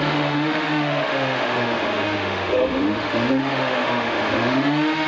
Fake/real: fake